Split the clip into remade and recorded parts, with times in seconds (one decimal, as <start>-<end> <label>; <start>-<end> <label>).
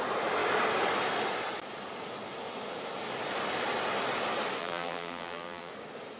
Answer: 0.0-4.6 recorded; 4.6-5.7 remade; 5.7-6.2 recorded